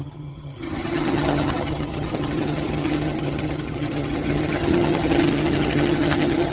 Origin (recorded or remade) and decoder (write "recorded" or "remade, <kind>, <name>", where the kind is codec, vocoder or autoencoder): remade, vocoder, HiFi-GAN